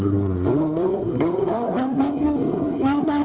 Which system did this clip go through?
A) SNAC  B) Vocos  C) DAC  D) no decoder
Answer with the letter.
A